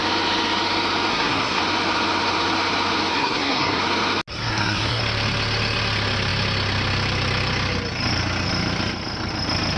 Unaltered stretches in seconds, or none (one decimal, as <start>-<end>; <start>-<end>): 0.0-1.1; 1.6-3.1; 3.8-4.3; 5.0-9.8